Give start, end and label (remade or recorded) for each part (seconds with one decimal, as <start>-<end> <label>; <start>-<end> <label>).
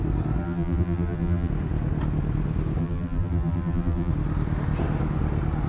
0.0-0.4 recorded; 0.4-1.5 remade; 1.5-2.8 recorded; 2.8-4.1 remade; 4.1-5.7 recorded